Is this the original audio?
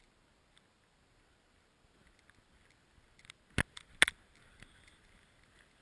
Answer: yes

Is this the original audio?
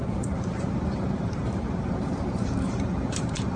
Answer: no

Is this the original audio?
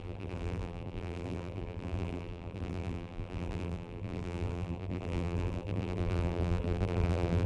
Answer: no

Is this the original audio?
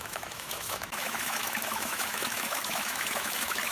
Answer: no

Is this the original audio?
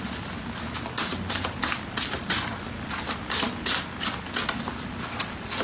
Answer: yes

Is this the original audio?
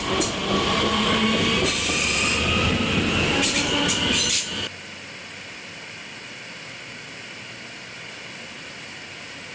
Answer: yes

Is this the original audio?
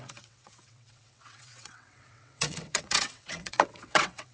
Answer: no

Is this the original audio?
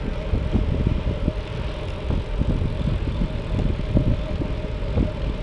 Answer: yes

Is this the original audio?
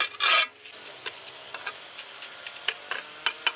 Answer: yes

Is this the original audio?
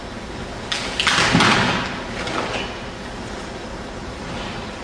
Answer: yes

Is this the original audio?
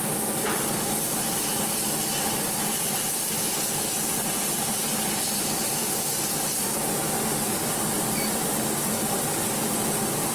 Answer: yes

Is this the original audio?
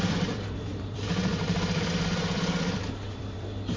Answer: no